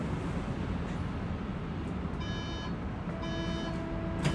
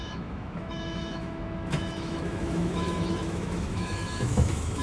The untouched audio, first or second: first